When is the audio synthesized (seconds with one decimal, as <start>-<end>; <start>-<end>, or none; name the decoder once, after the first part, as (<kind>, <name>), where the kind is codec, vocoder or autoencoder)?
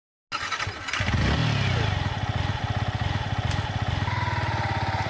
none